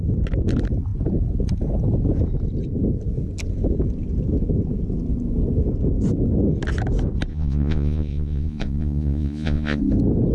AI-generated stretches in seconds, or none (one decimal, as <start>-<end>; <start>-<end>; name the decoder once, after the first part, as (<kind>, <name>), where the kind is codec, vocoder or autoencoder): 7.3-9.8 (vocoder, Vocos)